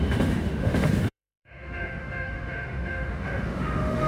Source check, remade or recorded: remade